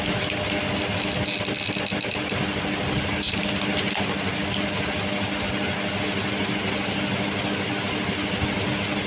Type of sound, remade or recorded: recorded